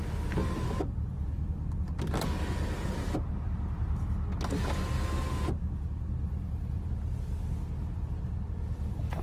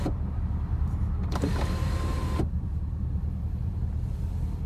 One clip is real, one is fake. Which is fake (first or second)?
second